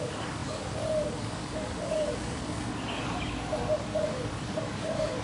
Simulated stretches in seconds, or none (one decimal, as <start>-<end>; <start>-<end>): 0.0-5.2